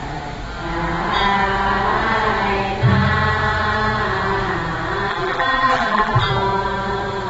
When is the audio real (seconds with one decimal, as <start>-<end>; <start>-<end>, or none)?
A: 0.0-5.1; 6.3-7.3

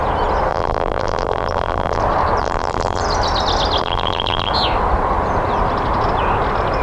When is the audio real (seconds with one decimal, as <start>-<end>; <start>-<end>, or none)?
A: 0.0-0.5; 2.0-2.4; 3.0-3.8; 4.5-6.8

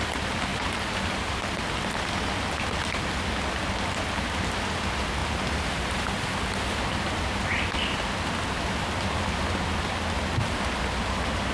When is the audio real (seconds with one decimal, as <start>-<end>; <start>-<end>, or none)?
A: 0.0-0.5; 1.6-5.2; 5.9-11.5

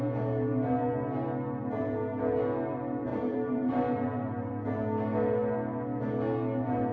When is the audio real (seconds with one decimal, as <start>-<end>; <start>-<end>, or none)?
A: 0.0-3.1; 4.5-6.9

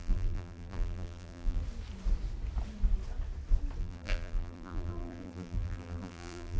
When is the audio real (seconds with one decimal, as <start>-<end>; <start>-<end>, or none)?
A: 1.6-3.8